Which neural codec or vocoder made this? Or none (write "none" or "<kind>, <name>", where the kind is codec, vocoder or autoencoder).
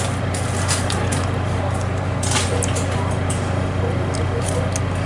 none